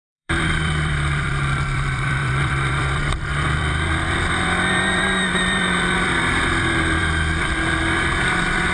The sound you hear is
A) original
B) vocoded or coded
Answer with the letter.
B